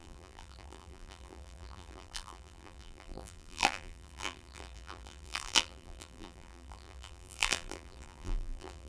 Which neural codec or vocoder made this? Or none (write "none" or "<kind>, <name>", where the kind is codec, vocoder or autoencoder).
vocoder, BigVGAN v2